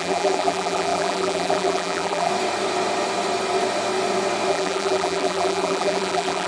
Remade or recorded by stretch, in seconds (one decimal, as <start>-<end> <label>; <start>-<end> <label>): 0.0-2.3 remade; 2.3-4.5 recorded; 4.5-6.5 remade